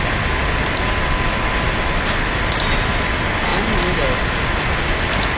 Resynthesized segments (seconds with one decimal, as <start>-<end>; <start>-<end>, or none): none